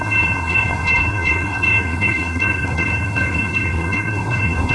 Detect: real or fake fake